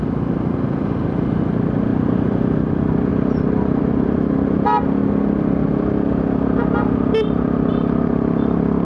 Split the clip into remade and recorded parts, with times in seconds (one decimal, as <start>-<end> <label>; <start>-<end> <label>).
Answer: 0.0-1.9 recorded; 1.9-2.4 remade; 2.4-3.1 recorded; 3.1-3.8 remade; 3.8-8.8 recorded